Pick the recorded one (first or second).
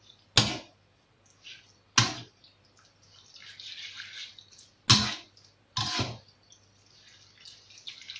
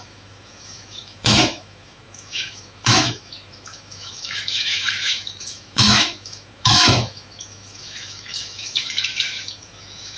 first